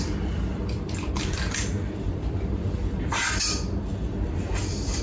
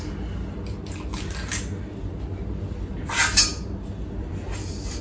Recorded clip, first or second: second